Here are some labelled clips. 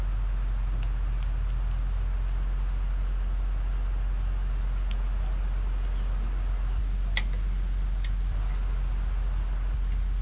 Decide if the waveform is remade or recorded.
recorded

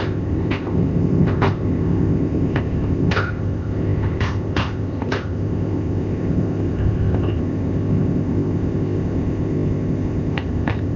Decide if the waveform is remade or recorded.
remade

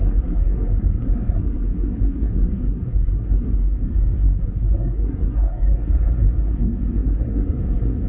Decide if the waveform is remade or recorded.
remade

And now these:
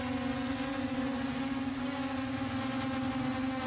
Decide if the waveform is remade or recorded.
recorded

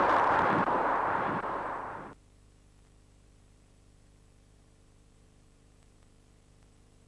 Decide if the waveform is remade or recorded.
remade